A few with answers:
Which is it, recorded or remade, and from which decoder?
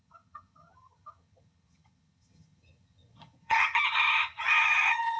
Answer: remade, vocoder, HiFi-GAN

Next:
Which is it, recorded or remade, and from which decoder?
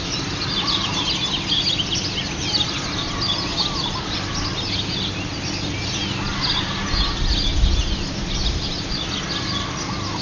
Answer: recorded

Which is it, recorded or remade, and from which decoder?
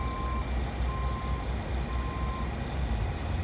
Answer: recorded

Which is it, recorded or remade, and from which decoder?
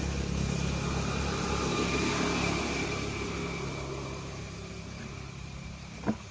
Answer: recorded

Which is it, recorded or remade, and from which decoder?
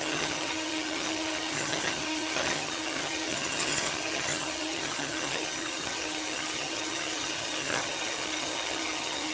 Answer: remade, vocoder, HiFi-GAN